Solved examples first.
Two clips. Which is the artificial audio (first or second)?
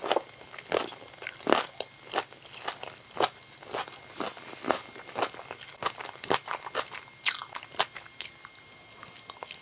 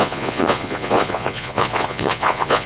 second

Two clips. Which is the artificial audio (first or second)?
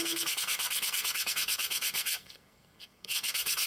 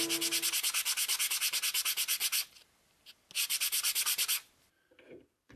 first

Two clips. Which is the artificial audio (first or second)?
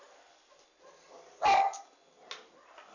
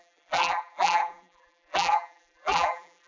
second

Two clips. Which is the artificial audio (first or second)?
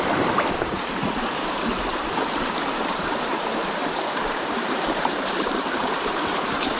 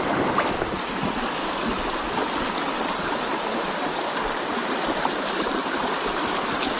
first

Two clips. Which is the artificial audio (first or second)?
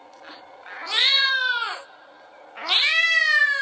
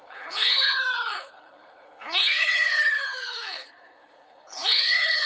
second